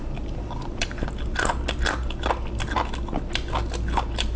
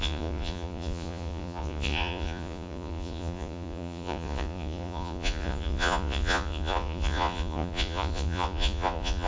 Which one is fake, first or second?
second